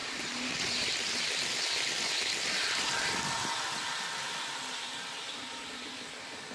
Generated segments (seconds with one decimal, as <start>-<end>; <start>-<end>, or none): none